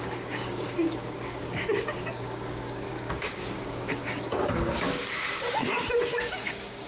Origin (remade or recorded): remade